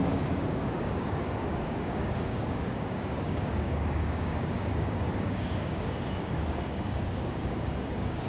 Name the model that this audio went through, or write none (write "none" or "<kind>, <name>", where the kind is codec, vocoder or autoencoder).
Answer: codec, DAC